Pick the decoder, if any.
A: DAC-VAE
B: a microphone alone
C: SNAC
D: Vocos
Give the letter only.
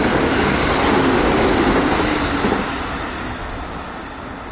B